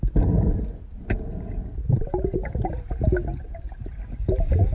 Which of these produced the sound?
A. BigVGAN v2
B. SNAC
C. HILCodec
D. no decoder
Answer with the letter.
D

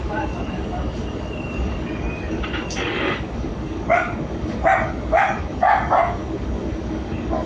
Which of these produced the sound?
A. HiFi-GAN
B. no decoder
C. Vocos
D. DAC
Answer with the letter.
D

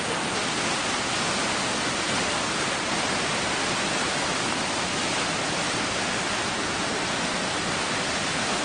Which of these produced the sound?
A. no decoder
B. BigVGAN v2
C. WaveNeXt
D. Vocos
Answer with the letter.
A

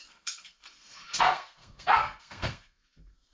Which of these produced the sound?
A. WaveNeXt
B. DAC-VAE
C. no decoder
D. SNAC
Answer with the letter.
D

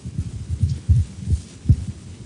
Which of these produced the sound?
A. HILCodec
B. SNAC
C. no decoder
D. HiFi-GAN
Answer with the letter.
A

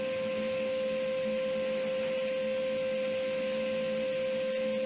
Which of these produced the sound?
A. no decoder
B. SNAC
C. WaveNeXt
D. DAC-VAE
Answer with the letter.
A